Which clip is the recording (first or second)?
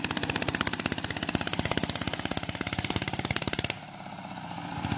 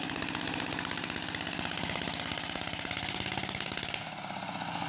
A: second